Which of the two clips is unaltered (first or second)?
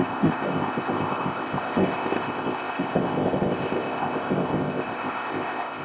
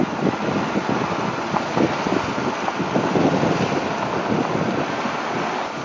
second